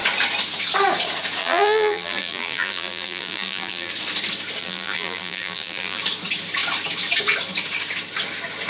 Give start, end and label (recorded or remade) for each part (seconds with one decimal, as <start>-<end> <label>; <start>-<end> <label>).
0.0-1.4 recorded; 1.4-3.9 remade; 3.9-4.6 recorded; 4.6-6.0 remade; 6.0-8.7 recorded